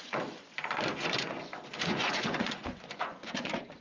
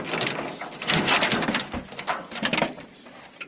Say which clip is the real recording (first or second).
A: second